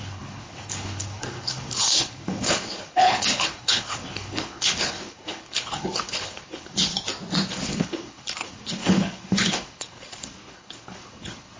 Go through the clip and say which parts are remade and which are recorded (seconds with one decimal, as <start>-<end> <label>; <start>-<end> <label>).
0.0-6.9 remade; 6.9-7.5 recorded; 7.5-11.6 remade